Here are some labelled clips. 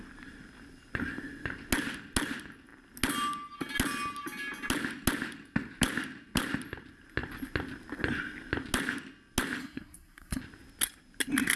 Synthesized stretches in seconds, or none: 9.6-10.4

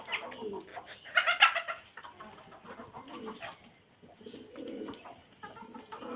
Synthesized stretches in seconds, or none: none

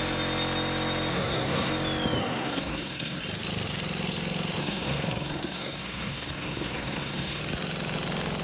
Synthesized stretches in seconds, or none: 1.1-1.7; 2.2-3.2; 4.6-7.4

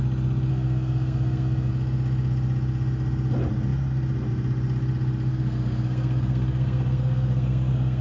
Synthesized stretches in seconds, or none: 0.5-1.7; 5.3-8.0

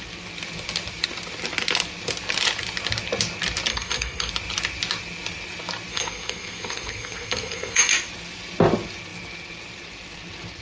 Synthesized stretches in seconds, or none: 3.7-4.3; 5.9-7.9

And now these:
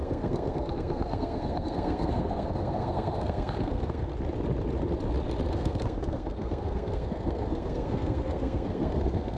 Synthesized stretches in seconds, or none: 0.0-4.1; 5.5-9.4

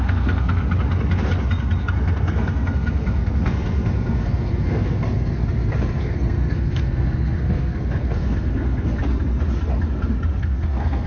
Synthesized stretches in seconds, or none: 0.0-0.6; 1.8-5.3; 6.0-9.0; 10.4-11.1